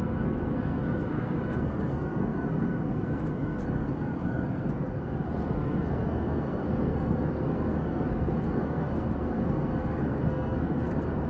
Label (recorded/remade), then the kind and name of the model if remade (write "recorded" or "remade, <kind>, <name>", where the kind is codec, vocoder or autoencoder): remade, codec, SNAC